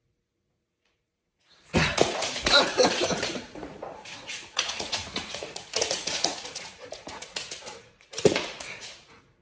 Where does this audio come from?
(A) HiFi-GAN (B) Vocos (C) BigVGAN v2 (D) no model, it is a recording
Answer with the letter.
B